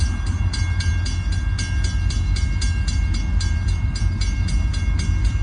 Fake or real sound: real